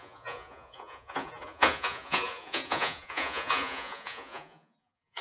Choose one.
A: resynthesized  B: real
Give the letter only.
A